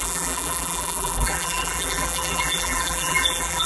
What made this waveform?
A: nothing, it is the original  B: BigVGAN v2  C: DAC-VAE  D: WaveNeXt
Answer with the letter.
B